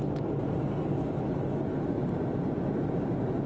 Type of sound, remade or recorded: recorded